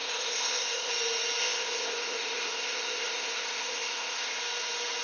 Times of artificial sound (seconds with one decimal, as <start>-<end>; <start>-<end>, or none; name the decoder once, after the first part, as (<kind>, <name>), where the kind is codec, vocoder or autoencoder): 0.0-0.9 (codec, ZipCodec); 1.4-4.4